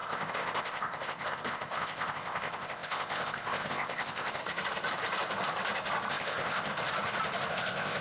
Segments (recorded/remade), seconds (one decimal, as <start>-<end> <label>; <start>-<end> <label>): 0.0-4.4 remade; 4.4-6.1 recorded; 6.1-6.7 remade; 6.7-7.5 recorded; 7.5-8.0 remade